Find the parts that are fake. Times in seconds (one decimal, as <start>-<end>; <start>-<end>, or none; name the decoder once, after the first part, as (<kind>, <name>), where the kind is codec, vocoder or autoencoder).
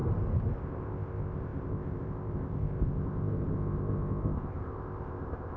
0.6-5.6 (codec, ZipCodec)